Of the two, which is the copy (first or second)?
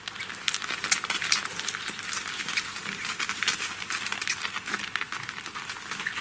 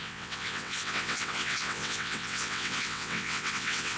second